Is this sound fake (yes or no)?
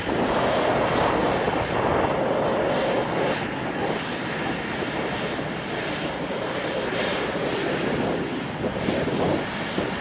no